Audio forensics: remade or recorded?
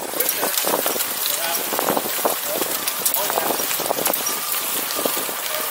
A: recorded